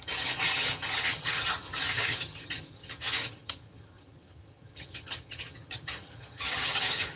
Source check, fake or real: fake